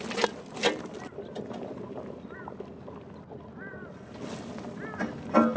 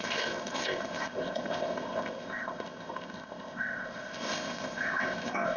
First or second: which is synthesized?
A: second